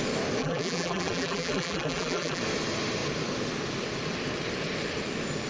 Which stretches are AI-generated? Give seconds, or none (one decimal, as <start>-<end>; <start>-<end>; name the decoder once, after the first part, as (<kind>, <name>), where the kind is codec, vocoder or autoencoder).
0.4-2.4 (vocoder, BigVGAN v2)